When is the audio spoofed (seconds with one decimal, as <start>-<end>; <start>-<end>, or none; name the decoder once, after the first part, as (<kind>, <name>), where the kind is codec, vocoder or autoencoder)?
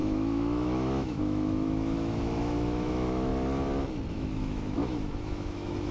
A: 0.0-3.3 (autoencoder, DAC-VAE); 4.1-5.9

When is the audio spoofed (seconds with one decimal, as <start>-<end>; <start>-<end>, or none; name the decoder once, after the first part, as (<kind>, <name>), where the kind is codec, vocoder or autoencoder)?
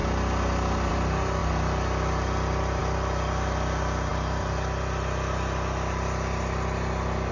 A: none